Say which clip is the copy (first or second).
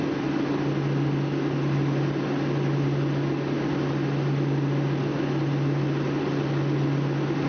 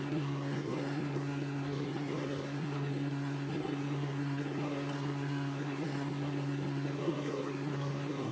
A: second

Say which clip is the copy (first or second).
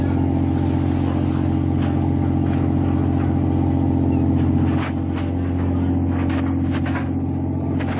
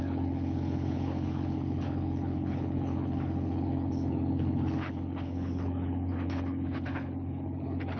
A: second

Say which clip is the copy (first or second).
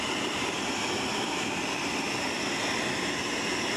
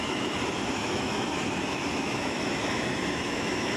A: second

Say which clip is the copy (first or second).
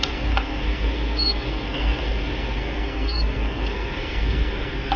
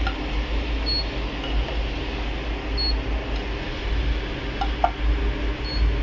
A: first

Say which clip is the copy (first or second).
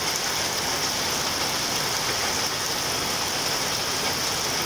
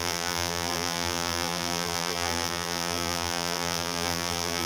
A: second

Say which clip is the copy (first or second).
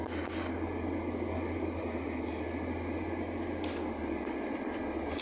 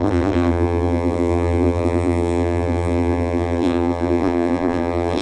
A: second